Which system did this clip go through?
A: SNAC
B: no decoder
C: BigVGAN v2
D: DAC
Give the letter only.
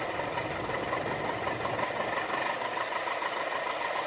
B